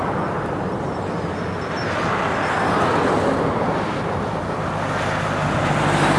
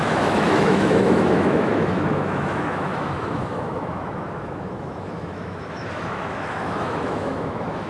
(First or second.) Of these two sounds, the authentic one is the first